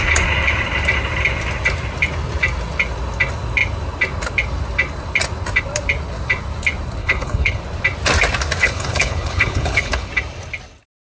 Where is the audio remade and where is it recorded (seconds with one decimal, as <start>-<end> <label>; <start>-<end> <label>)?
0.0-7.0 recorded; 7.0-7.6 remade; 7.6-8.6 recorded; 8.6-10.1 remade; 10.1-11.0 recorded